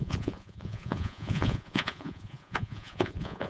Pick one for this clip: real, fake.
fake